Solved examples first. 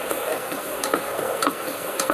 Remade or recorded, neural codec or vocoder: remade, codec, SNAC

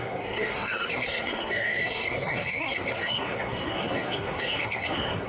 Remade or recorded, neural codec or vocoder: remade, codec, SNAC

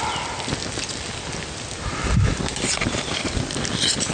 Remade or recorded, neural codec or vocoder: recorded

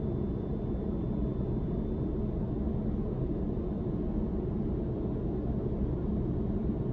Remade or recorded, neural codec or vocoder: recorded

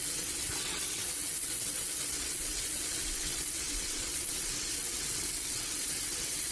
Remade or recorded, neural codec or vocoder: remade, vocoder, WaveNeXt